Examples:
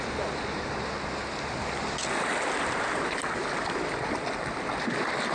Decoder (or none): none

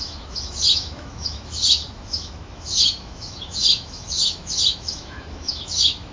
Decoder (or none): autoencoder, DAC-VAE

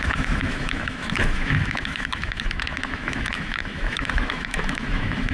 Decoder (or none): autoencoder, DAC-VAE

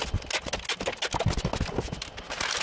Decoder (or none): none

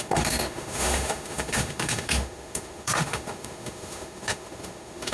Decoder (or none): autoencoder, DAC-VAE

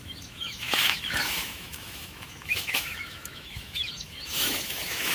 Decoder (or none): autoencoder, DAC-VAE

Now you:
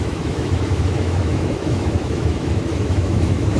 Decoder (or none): autoencoder, DAC-VAE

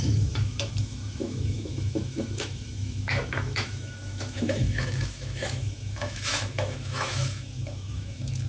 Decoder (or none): autoencoder, DAC-VAE